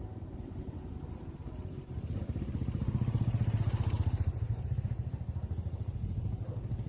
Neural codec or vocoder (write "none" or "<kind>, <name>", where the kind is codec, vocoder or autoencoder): none